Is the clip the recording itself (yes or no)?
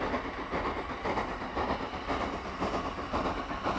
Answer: yes